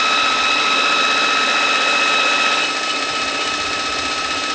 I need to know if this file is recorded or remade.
recorded